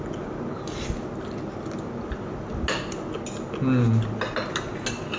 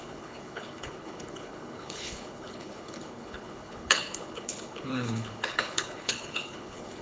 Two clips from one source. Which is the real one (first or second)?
first